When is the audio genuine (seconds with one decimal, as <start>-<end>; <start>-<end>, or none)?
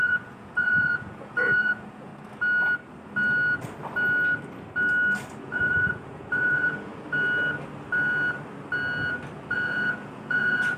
2.1-5.4; 6.9-9.5